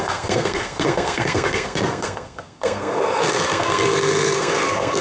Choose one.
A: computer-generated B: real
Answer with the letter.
A